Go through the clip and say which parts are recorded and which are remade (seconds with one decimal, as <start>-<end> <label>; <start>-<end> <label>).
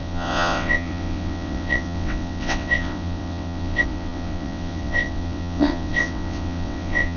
0.0-7.2 remade